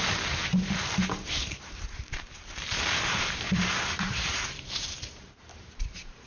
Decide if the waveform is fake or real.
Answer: fake